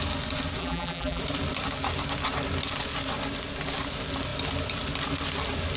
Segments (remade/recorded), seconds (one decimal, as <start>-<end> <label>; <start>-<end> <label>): 0.0-0.6 recorded; 0.6-1.2 remade; 1.2-5.8 recorded